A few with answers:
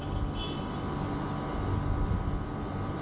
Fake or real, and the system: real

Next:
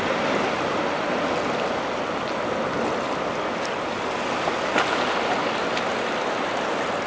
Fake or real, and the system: real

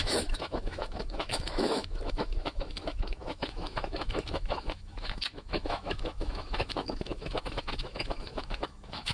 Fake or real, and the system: fake, autoencoder, DAC-VAE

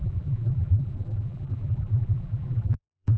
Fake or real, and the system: fake, vocoder, BigVGAN v2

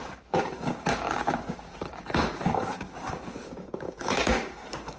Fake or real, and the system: fake, codec, DAC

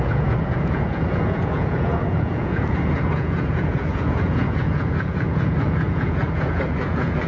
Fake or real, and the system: fake, vocoder, Vocos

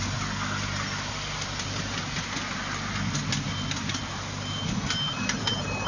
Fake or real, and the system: real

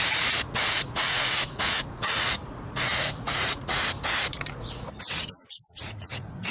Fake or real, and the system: fake, vocoder, Vocos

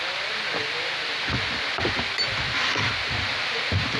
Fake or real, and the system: real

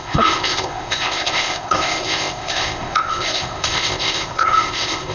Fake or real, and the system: fake, codec, ZipCodec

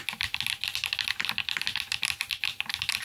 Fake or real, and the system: real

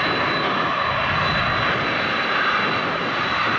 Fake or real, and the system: real